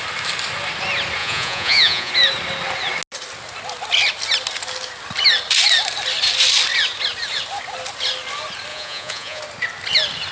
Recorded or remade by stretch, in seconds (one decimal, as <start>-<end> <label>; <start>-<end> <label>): 0.0-1.2 recorded; 1.2-2.1 remade; 2.1-8.7 recorded; 8.7-9.4 remade; 9.4-10.3 recorded